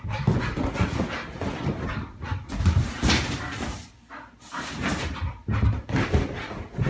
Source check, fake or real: real